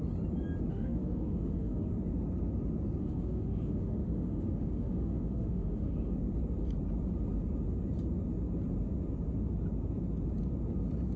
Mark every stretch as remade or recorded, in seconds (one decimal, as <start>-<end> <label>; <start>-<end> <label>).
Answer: 0.0-0.7 recorded; 0.7-1.9 remade; 1.9-3.0 recorded; 3.0-6.1 remade; 6.1-11.2 recorded